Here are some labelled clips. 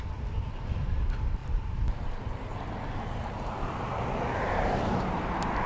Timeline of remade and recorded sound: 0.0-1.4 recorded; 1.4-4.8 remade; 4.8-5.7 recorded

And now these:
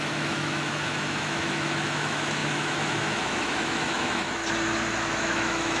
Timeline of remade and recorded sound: 0.0-4.4 remade; 4.4-5.0 recorded; 5.0-5.8 remade

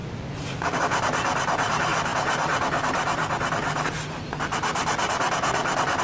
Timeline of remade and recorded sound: 0.0-6.0 recorded

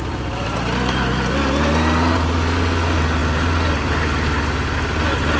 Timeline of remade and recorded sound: 0.0-5.4 recorded

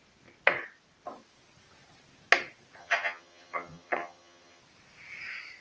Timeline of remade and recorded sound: 0.0-2.8 recorded; 2.8-4.6 remade; 4.6-5.6 recorded

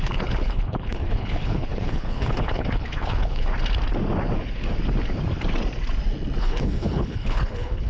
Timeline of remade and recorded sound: 0.0-3.5 remade; 3.5-6.4 recorded; 6.4-7.9 remade

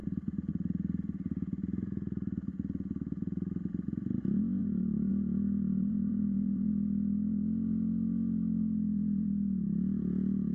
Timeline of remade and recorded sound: 0.0-4.6 recorded; 4.6-5.1 remade; 5.1-5.7 recorded; 5.7-6.7 remade; 6.7-10.5 recorded